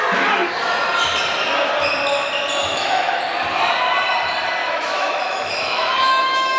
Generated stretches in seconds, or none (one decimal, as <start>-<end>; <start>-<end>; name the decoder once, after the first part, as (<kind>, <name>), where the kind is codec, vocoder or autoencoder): 2.6-3.2 (autoencoder, DAC-VAE); 4.6-6.6